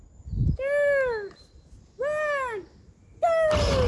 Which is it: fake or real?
real